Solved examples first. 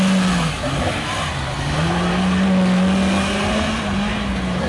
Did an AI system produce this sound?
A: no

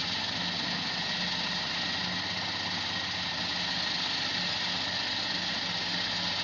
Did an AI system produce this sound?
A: no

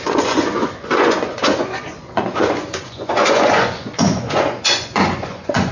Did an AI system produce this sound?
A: yes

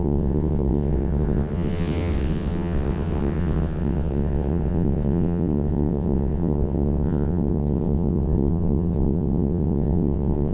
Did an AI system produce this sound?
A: yes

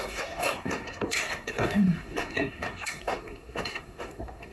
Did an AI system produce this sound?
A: yes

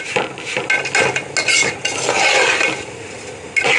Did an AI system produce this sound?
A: no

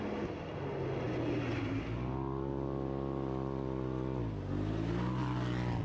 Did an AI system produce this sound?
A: no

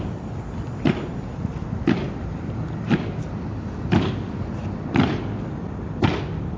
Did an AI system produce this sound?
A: no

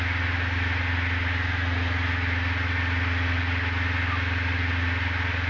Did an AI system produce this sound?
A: no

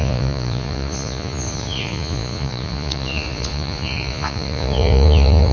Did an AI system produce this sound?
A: yes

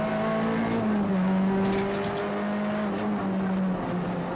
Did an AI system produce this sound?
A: no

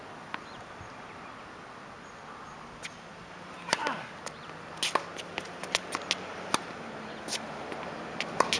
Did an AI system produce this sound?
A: no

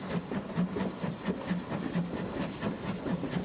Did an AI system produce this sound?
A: no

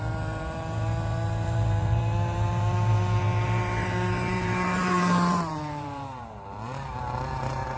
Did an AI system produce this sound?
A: yes